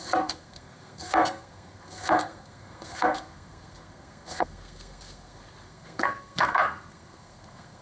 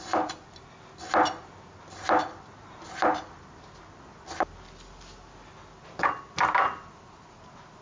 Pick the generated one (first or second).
first